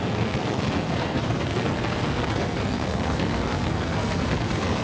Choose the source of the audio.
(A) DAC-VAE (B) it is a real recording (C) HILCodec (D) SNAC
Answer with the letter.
D